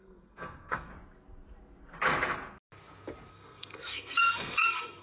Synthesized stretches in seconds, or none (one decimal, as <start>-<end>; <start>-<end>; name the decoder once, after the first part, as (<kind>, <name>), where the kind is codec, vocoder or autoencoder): 0.0-0.9 (codec, SNAC); 3.3-5.0